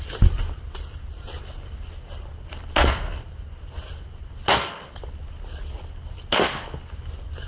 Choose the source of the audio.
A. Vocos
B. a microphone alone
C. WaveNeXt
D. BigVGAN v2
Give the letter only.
B